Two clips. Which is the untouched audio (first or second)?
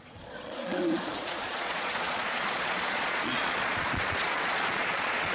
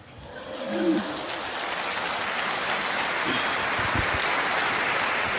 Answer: second